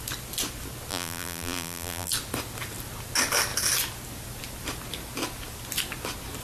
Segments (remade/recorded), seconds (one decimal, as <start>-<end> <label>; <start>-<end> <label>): 0.0-0.9 recorded; 0.9-2.1 remade; 2.1-6.4 recorded